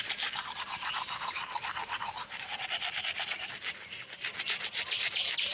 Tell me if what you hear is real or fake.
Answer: real